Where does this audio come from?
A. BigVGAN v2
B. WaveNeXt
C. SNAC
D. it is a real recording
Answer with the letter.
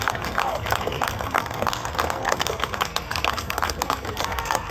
C